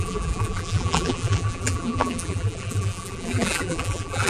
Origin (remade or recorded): remade